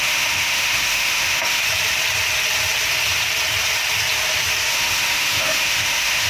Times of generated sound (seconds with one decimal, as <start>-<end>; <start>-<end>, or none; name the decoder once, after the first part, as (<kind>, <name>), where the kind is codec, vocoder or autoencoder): 0.0-1.6 (autoencoder, DAC-VAE); 4.7-6.3